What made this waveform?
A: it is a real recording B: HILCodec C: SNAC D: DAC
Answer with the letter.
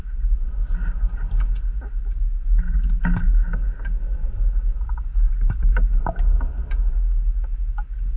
A